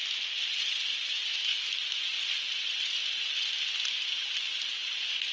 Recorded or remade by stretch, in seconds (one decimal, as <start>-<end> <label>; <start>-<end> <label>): 0.0-5.3 remade